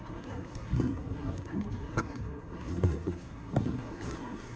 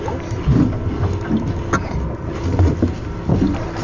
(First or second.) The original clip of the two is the second